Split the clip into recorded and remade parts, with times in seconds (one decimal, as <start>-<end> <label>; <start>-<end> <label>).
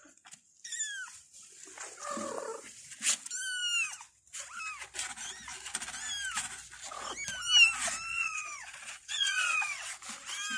0.0-8.1 recorded; 8.1-9.9 remade; 9.9-10.6 recorded